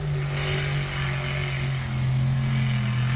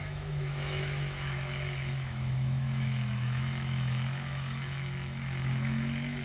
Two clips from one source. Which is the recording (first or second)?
first